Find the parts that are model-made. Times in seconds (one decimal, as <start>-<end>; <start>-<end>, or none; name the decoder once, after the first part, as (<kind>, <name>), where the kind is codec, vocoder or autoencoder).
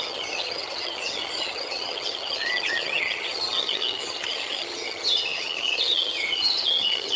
0.0-7.2 (vocoder, HiFi-GAN)